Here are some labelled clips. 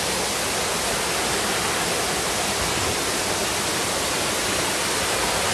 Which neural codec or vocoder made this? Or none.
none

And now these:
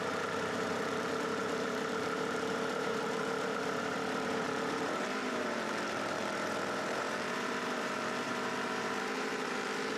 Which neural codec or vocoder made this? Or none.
vocoder, BigVGAN v2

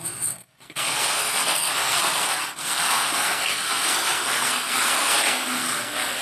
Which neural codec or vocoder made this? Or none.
codec, SNAC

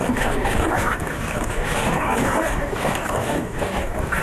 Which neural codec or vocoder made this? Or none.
codec, DAC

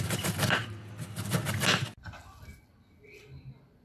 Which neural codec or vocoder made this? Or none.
none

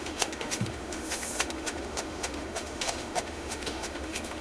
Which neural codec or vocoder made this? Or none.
autoencoder, DAC-VAE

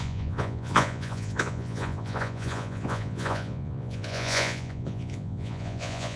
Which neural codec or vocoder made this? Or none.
vocoder, Vocos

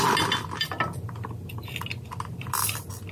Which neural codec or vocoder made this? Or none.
none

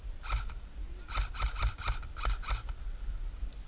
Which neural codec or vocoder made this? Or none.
none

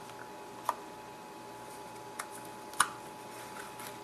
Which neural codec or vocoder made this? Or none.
none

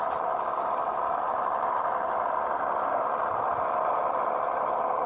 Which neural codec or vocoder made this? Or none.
none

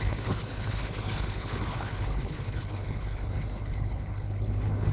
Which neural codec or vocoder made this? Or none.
codec, HILCodec